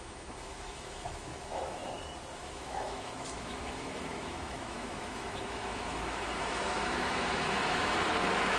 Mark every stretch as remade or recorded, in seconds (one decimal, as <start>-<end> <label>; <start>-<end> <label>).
0.0-1.8 remade; 1.8-2.3 recorded; 2.3-8.6 remade